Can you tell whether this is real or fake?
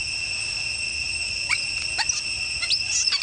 real